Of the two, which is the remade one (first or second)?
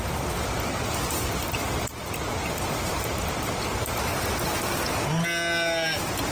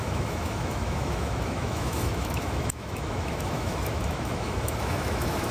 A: second